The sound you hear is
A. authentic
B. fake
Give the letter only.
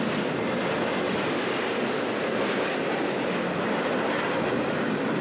A